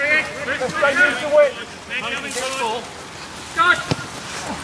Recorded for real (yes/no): yes